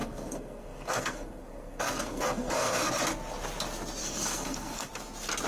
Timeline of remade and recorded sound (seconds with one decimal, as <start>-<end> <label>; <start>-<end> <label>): 0.0-2.9 remade; 2.9-4.0 recorded; 4.0-4.9 remade; 4.9-5.5 recorded